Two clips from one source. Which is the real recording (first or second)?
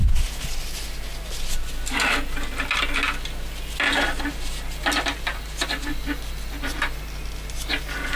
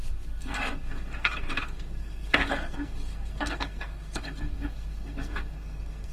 first